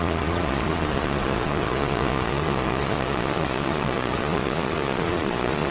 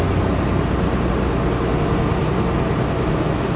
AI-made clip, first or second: first